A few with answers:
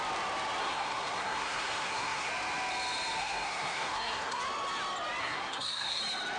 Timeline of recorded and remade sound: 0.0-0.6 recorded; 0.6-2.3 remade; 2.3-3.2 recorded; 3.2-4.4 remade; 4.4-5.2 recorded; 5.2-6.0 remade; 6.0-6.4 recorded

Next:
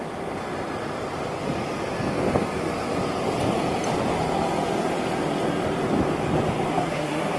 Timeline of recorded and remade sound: 0.0-6.7 recorded; 6.7-7.4 remade